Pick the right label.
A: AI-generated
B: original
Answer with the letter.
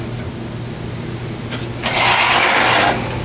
B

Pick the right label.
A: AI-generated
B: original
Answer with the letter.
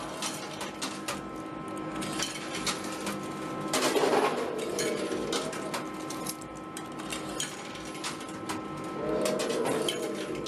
B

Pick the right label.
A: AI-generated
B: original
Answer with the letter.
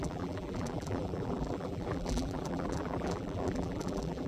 A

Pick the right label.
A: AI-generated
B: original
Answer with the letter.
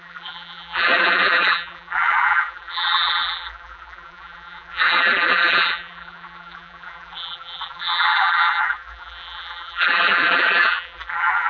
A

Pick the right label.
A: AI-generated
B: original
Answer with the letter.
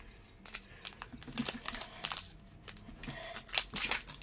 B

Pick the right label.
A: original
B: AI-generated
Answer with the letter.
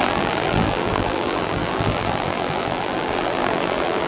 B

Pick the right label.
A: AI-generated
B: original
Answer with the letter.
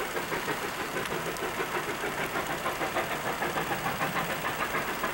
B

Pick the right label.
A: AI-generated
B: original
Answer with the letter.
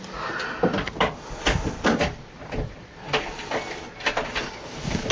B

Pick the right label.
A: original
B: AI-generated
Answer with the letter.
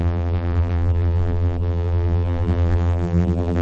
B